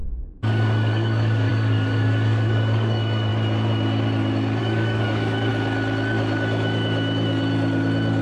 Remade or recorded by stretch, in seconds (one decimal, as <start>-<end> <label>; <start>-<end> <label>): 0.0-3.3 remade; 3.3-4.6 recorded; 4.6-5.5 remade; 5.5-8.2 recorded